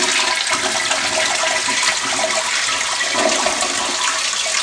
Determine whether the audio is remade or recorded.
recorded